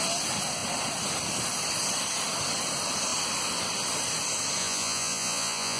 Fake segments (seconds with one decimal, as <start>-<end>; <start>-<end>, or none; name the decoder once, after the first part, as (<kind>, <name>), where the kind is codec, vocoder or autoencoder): 4.6-5.8 (vocoder, Vocos)